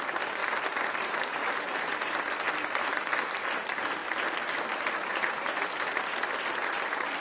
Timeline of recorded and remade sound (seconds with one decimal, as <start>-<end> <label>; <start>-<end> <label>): 0.0-0.4 remade; 0.4-2.7 recorded; 2.7-4.0 remade; 4.0-6.1 recorded; 6.1-7.2 remade